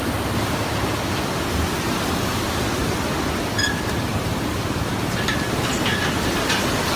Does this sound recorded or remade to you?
recorded